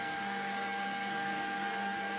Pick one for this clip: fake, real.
fake